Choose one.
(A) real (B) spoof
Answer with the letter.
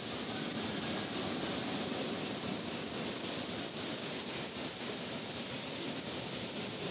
A